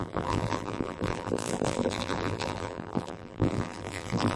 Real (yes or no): no